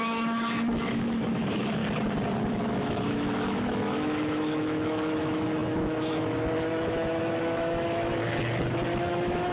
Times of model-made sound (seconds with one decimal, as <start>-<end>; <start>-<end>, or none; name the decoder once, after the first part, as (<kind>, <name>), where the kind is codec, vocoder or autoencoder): 0.0-1.8 (autoencoder, DAC-VAE); 2.5-8.1; 9.0-9.5